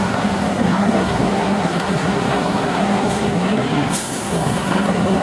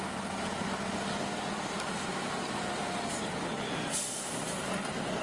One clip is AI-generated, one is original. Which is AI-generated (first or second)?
first